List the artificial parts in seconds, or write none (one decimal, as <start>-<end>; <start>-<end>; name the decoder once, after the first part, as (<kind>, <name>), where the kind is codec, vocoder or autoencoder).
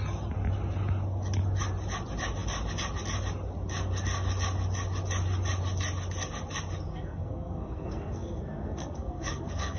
6.9-9.8 (codec, SNAC)